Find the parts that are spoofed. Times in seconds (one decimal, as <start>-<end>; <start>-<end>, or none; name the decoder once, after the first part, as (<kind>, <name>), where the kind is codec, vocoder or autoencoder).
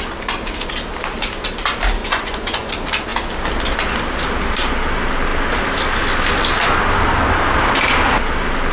2.0-2.7 (vocoder, Vocos)